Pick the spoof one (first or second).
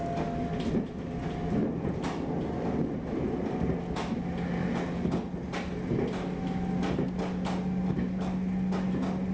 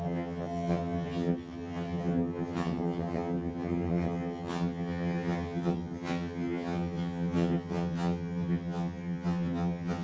second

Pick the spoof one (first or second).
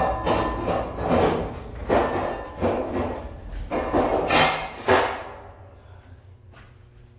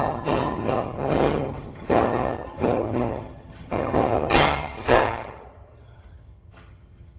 second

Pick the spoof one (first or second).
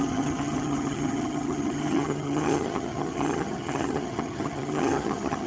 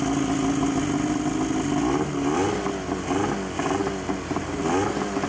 first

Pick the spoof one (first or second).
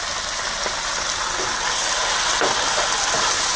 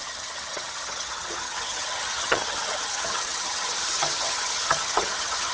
second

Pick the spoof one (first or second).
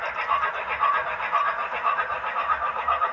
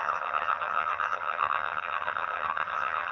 second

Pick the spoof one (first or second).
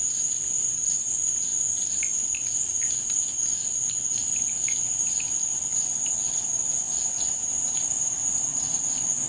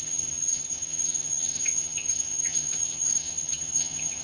second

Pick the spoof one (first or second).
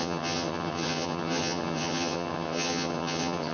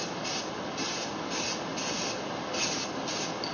first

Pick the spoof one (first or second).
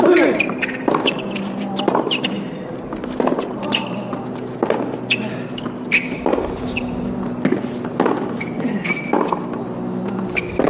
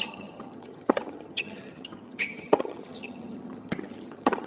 second